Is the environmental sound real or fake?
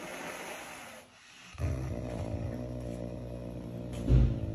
real